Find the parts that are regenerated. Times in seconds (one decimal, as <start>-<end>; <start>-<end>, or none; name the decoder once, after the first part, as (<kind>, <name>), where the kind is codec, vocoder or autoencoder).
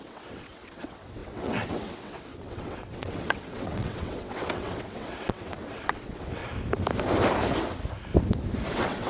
0.0-6.4 (vocoder, WaveNeXt); 8.7-9.1